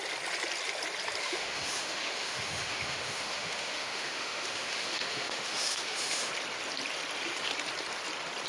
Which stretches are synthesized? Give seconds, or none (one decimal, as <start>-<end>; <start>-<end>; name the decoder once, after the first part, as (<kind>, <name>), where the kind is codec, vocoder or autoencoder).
1.2-6.3 (autoencoder, DAC-VAE)